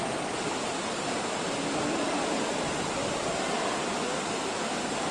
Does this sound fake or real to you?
real